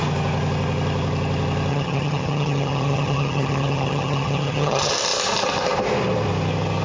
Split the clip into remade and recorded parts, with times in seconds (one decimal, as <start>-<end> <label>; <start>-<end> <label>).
0.0-1.7 recorded; 1.7-4.9 remade; 4.9-6.8 recorded